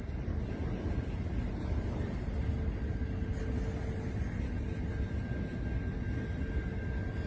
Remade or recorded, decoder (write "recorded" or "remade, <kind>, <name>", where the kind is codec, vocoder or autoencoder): recorded